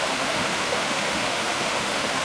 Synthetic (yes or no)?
yes